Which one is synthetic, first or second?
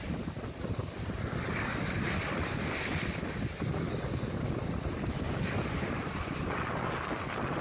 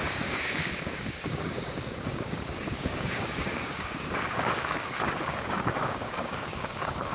second